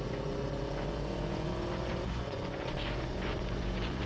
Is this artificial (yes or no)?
yes